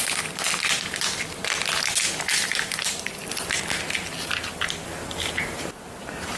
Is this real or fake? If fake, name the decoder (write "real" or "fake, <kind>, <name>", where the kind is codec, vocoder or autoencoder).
real